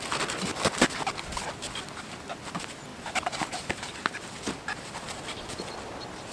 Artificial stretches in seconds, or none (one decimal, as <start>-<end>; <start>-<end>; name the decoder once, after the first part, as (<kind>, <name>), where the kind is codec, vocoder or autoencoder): 2.9-3.9 (vocoder, BigVGAN v2)